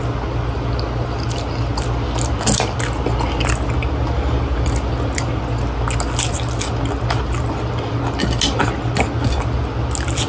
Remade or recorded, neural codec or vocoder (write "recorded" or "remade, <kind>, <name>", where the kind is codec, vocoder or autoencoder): recorded